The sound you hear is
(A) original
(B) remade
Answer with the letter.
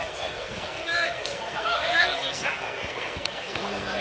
B